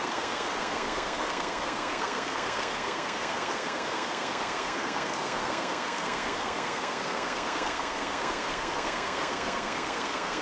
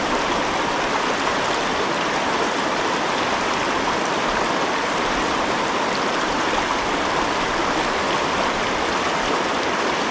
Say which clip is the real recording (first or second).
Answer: second